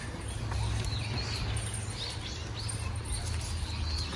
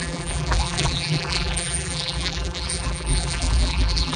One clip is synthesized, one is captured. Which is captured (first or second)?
first